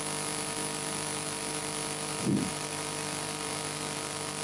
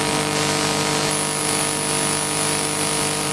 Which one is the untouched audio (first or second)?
second